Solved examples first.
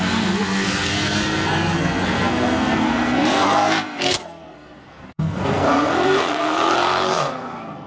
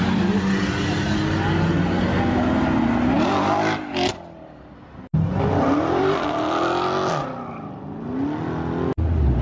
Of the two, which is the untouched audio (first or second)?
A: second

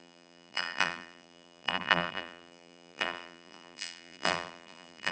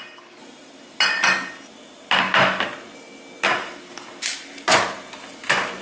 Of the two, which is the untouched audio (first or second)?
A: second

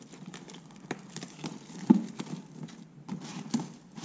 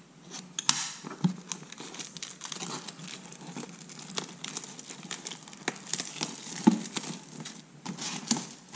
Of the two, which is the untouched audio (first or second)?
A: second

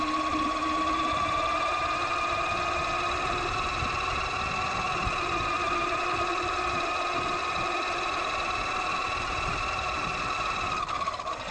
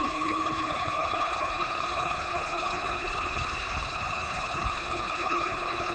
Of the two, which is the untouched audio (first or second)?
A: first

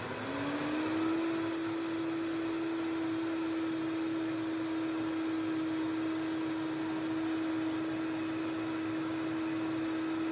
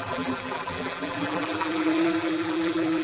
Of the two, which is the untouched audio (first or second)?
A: first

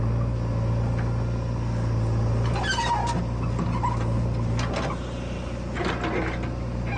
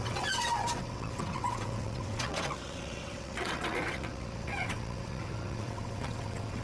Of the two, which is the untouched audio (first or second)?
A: first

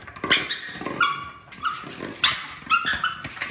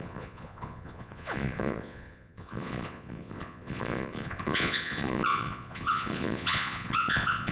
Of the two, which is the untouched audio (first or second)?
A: first